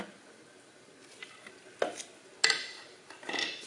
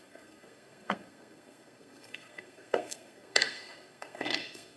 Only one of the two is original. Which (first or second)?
first